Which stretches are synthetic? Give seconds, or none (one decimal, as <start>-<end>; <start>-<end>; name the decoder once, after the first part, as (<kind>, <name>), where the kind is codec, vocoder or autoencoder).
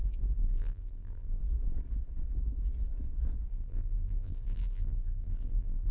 0.4-1.4 (vocoder, BigVGAN v2); 3.5-5.9